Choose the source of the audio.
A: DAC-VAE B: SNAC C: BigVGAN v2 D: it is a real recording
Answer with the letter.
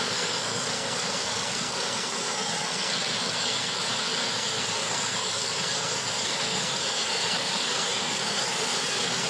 B